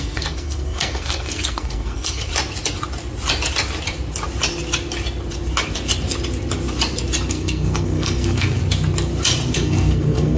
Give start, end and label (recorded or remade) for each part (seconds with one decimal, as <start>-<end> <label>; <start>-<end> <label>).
0.0-2.3 remade; 2.3-7.3 recorded; 7.3-8.6 remade; 8.6-9.5 recorded; 9.5-10.4 remade